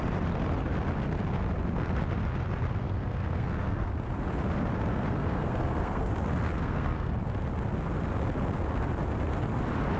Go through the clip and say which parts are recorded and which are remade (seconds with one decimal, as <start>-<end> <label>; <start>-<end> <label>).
0.0-2.8 recorded; 2.8-3.9 remade; 3.9-4.9 recorded; 4.9-6.1 remade; 6.1-6.5 recorded; 6.5-7.1 remade; 7.1-10.0 recorded